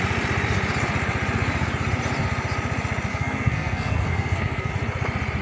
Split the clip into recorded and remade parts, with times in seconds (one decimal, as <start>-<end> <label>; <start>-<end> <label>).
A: 0.0-3.1 recorded; 3.1-4.7 remade; 4.7-5.4 recorded